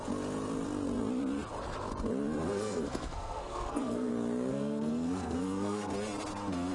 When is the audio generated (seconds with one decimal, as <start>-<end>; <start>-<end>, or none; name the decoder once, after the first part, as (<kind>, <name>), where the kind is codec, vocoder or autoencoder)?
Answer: 2.5-4.1 (codec, SNAC); 4.5-5.9